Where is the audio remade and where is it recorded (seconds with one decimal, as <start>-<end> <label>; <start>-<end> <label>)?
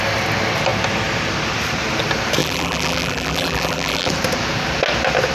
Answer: 0.0-2.4 recorded; 2.4-4.1 remade; 4.1-5.3 recorded